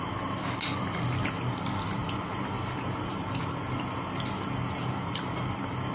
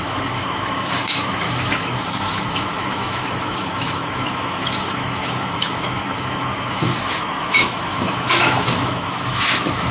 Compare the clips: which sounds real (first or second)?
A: first